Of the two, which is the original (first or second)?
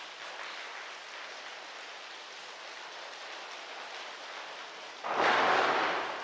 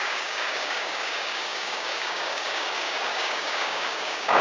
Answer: first